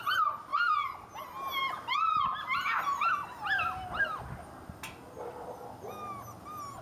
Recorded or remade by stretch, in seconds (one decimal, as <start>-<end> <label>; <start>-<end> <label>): 0.0-6.8 recorded

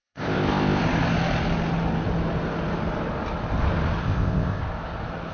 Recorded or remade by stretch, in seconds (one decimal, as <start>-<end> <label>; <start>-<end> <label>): 0.0-0.8 remade; 0.8-4.0 recorded; 4.0-4.6 remade; 4.6-5.3 recorded

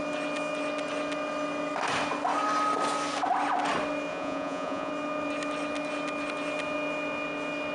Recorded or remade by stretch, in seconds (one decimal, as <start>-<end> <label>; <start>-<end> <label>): 0.0-4.1 recorded; 4.1-4.9 remade; 4.9-7.7 recorded

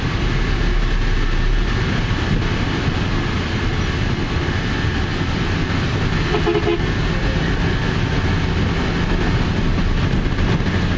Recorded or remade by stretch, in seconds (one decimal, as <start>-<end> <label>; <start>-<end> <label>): 0.0-11.0 recorded

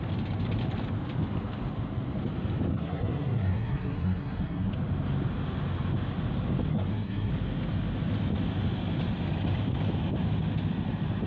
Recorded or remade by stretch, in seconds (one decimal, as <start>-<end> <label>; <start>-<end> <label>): 0.0-2.7 recorded; 2.7-4.7 remade; 4.7-6.7 recorded; 6.7-7.3 remade; 7.3-11.3 recorded

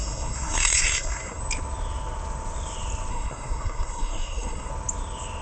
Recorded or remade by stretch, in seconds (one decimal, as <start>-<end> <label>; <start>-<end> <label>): 0.0-1.4 remade; 1.4-3.1 recorded; 3.1-4.7 remade; 4.7-5.4 recorded